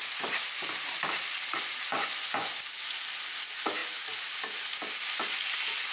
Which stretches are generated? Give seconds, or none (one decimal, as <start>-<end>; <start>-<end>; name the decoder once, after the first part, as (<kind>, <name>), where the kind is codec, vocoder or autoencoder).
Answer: 1.9-2.6 (vocoder, Vocos)